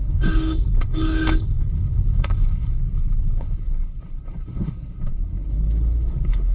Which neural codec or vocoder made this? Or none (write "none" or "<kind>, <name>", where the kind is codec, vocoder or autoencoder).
codec, HILCodec